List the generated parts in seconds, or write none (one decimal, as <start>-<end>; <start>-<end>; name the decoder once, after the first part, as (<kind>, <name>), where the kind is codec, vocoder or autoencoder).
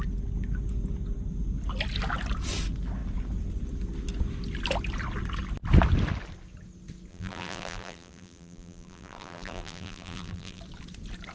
7.1-10.6 (vocoder, BigVGAN v2)